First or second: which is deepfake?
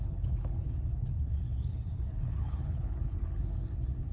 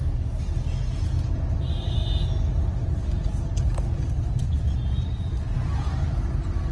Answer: first